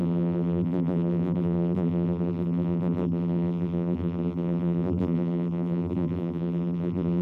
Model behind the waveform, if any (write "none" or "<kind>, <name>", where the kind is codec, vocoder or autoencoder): vocoder, BigVGAN v2